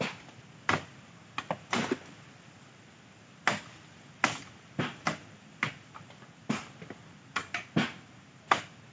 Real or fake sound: real